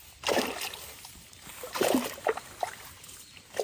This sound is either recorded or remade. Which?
recorded